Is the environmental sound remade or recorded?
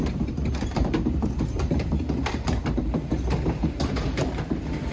remade